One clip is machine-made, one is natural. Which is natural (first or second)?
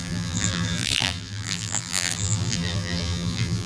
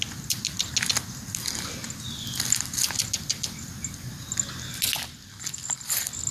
second